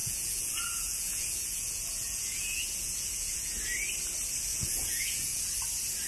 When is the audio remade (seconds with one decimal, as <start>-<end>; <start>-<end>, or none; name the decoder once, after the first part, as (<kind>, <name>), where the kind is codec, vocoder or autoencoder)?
0.0-3.5 (vocoder, Vocos); 4.5-5.4